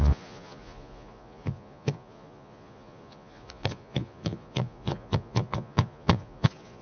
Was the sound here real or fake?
fake